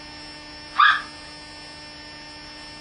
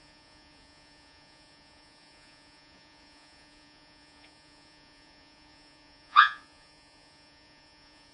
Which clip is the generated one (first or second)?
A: second